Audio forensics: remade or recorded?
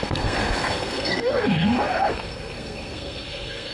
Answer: remade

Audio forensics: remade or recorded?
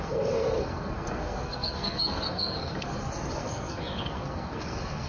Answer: remade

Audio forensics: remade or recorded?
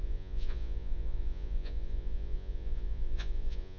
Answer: remade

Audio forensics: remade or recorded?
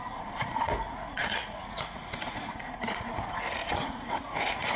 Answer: remade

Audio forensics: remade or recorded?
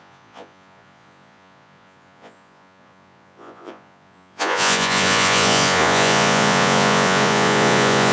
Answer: remade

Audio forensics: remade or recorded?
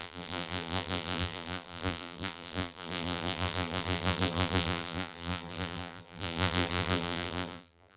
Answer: remade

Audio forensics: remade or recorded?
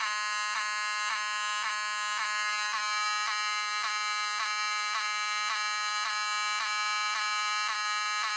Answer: recorded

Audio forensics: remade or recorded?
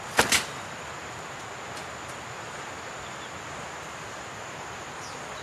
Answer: recorded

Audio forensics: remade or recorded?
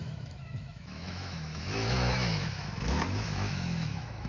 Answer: remade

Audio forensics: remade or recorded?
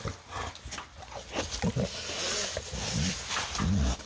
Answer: recorded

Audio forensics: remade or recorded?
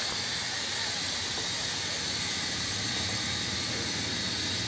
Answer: recorded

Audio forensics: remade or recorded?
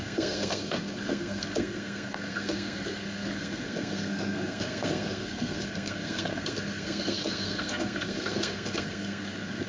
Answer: remade